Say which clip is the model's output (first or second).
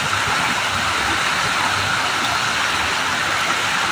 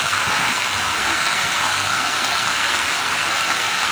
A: second